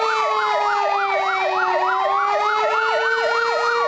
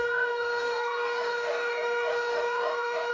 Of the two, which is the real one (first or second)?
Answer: first